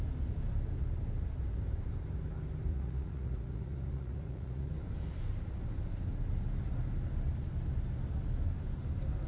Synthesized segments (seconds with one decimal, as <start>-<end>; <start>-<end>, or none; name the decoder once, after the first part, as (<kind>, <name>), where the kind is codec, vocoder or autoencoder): 2.7-4.7 (vocoder, Vocos)